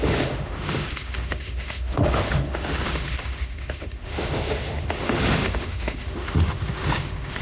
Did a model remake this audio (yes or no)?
yes